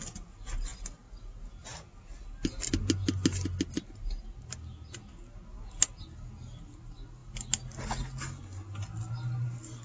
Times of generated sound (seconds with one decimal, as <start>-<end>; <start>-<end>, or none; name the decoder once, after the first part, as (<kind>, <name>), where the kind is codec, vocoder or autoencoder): none